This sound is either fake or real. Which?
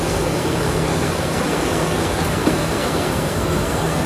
fake